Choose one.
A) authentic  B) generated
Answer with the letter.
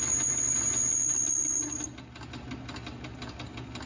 A